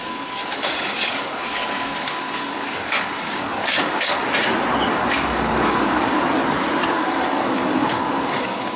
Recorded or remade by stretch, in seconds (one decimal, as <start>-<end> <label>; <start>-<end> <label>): 0.0-4.2 remade; 4.2-4.9 recorded; 4.9-6.4 remade; 6.4-6.9 recorded; 6.9-8.8 remade